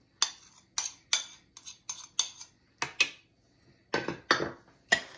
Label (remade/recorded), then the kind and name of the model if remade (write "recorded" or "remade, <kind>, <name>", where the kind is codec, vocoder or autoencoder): recorded